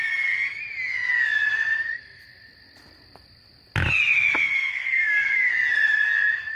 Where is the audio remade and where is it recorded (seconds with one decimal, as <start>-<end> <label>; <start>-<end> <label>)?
0.0-4.7 recorded; 4.7-5.5 remade; 5.5-6.6 recorded